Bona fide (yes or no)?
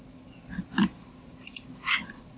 yes